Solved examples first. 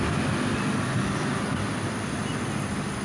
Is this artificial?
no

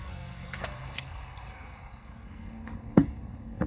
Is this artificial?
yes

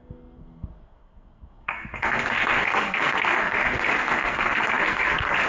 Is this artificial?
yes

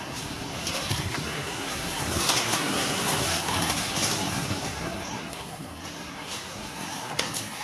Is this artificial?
yes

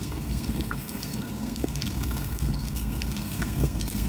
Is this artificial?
yes